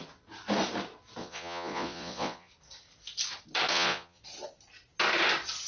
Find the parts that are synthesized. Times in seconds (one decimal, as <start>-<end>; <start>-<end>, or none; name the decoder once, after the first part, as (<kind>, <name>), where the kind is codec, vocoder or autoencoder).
1.2-2.5 (vocoder, Vocos); 3.7-4.2

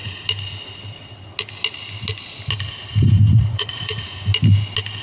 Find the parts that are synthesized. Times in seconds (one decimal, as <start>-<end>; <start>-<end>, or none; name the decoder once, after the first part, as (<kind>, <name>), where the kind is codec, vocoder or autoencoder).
2.9-4.3 (vocoder, Vocos)